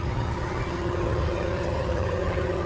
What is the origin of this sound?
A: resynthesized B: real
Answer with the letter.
A